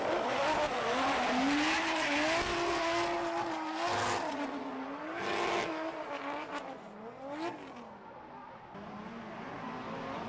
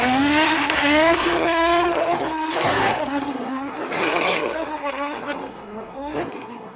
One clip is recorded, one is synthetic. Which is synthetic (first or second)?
second